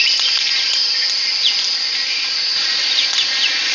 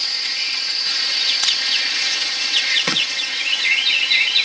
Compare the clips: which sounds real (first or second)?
first